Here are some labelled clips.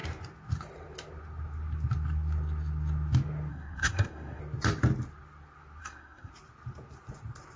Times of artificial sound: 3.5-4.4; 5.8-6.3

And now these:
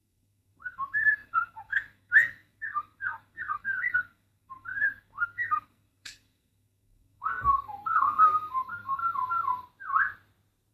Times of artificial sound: 0.0-9.0

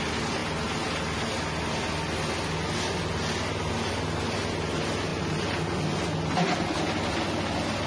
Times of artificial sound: none